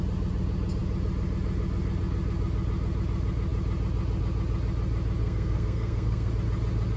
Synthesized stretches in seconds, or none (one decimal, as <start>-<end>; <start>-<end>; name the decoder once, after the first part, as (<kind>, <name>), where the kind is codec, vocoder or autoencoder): 5.2-6.3 (codec, SNAC)